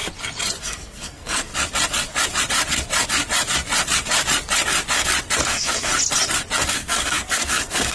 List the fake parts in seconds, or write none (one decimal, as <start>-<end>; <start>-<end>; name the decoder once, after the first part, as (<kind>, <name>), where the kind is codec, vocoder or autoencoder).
0.6-1.5 (codec, SNAC); 5.4-5.9; 6.7-7.9